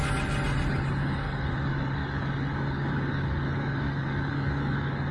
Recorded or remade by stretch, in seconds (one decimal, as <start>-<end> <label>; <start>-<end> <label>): 0.0-0.7 recorded; 0.7-5.1 remade